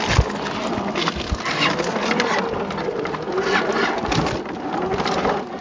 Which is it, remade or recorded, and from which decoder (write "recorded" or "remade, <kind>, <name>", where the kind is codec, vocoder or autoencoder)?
recorded